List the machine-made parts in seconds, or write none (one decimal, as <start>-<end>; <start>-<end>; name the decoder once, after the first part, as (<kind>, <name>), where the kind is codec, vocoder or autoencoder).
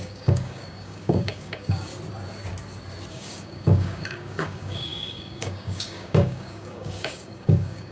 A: 0.0-1.9 (codec, DAC); 3.1-7.9